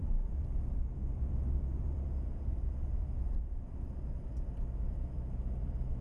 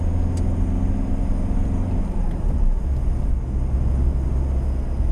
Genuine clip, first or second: second